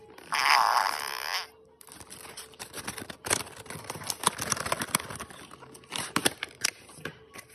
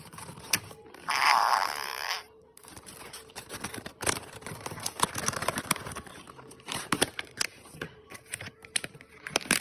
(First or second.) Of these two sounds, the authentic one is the first